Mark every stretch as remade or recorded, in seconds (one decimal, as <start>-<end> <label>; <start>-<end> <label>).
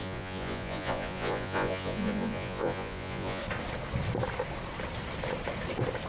0.0-3.4 remade; 3.4-6.1 recorded